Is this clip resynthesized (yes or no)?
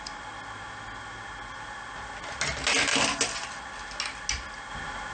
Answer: no